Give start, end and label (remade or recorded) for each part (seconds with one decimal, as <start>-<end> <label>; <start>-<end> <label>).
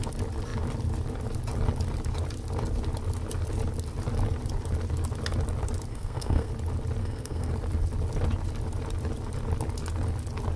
0.0-5.9 recorded; 5.9-6.5 remade; 6.5-7.0 recorded; 7.0-7.5 remade; 7.5-10.6 recorded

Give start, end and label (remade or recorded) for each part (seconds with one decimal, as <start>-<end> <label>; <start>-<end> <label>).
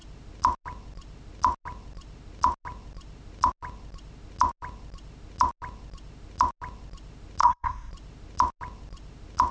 0.0-7.4 recorded; 7.4-7.9 remade; 7.9-9.5 recorded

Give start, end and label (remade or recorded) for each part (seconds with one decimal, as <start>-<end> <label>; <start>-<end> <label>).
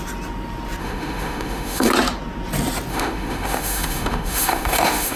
0.0-0.8 recorded; 0.8-1.9 remade; 1.9-2.9 recorded; 2.9-5.2 remade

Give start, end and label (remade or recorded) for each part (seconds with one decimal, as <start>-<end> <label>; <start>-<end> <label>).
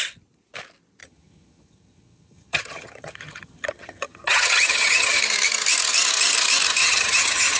0.0-1.0 recorded; 1.0-5.2 remade; 5.2-6.8 recorded; 6.8-7.6 remade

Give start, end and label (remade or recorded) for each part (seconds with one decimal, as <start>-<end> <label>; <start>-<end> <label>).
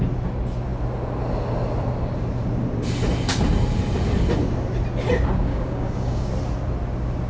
0.0-5.5 recorded; 5.5-6.3 remade; 6.3-7.3 recorded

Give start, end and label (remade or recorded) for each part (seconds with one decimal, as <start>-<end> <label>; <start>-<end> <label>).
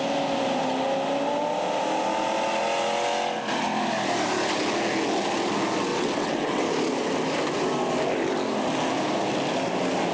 0.0-5.9 recorded; 5.9-6.6 remade; 6.6-10.1 recorded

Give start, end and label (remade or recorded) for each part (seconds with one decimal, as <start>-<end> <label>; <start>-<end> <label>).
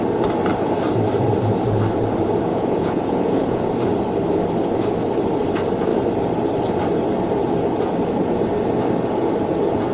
0.0-2.5 recorded; 2.5-3.7 remade; 3.7-9.9 recorded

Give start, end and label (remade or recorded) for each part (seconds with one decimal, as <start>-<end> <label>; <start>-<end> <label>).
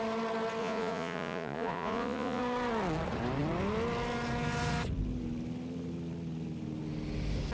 0.0-0.6 recorded; 0.6-2.4 remade; 2.4-7.5 recorded